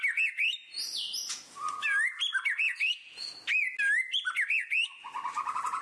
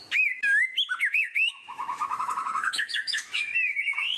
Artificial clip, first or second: second